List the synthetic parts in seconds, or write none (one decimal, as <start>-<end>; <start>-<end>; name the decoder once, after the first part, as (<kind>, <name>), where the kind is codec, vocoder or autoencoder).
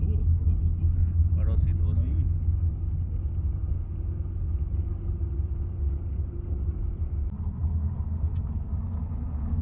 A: none